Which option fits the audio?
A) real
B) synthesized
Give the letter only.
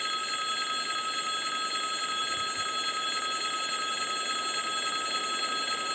A